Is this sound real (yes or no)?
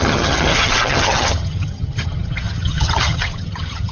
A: no